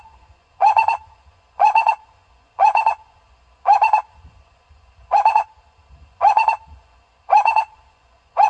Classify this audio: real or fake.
fake